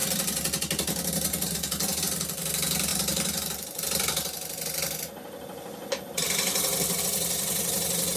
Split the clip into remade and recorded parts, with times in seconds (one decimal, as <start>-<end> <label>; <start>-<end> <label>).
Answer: 0.0-8.2 recorded